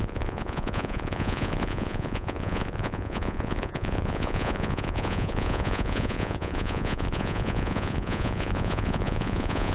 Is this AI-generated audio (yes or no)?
yes